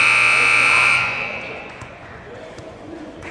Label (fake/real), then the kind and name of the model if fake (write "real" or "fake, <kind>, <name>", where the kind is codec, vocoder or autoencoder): fake, vocoder, Vocos